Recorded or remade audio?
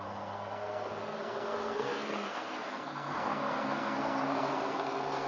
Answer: remade